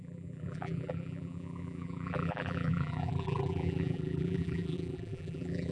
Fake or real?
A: fake